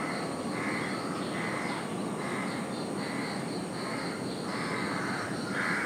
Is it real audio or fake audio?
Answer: real